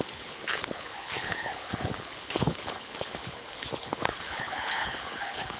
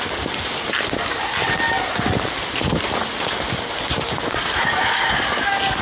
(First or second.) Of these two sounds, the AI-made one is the first